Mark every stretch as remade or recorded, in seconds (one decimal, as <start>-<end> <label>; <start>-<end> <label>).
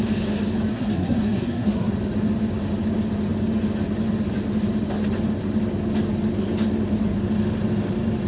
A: 0.0-0.7 recorded; 0.7-1.9 remade; 1.9-8.3 recorded